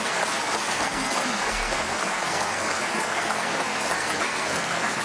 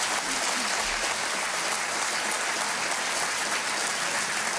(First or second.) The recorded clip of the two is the second